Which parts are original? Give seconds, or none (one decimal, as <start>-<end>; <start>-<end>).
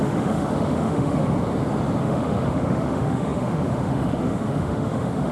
1.2-2.0